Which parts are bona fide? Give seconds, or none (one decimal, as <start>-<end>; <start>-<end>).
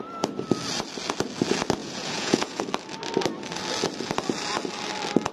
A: 0.0-1.8; 2.6-5.3